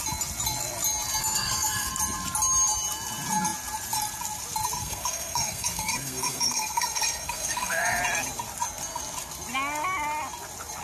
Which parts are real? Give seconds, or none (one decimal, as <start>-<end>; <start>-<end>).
0.0-1.2; 1.9-4.8; 8.0-10.8